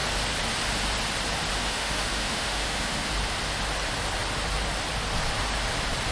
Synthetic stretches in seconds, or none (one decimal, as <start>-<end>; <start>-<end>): 1.6-3.1